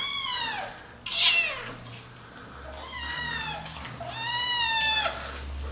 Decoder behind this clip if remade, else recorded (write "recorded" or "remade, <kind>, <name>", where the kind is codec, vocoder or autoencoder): recorded